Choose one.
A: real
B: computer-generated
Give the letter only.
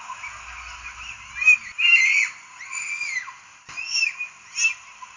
A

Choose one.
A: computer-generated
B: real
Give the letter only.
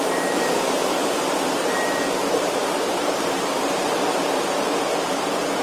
A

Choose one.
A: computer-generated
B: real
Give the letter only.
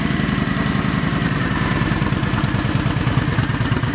A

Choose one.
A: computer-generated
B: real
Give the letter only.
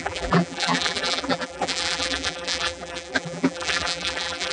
A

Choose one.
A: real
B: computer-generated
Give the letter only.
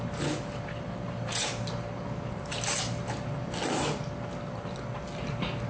A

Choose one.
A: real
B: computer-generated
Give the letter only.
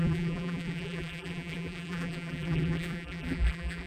B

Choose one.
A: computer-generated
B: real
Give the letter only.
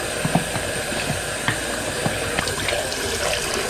A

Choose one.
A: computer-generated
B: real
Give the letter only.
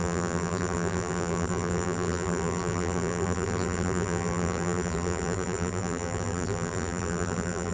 A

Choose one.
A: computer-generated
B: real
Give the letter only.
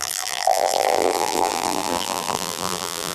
A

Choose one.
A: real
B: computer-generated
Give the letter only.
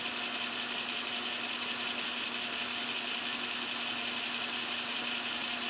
A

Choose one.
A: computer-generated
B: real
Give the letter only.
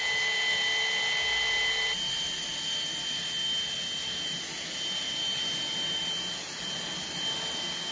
B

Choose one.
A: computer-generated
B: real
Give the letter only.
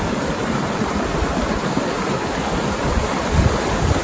A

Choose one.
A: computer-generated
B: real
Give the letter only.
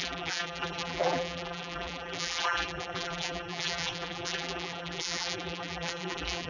A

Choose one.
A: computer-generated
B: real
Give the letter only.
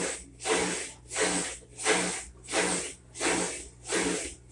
B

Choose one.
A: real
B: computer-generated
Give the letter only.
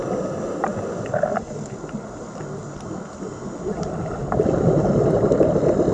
A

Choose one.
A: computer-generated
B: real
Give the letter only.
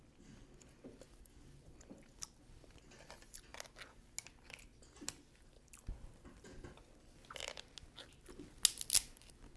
B